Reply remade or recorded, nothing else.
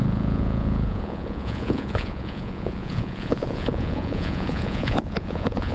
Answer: remade